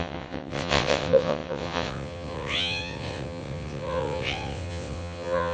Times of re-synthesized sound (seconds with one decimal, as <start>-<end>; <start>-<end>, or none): 0.0-5.5